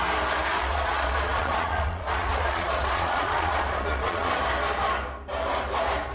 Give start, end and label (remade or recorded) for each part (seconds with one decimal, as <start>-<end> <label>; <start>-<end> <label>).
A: 0.0-0.6 recorded; 0.6-4.3 remade; 4.3-6.1 recorded